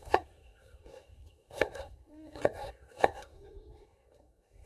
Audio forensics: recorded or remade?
remade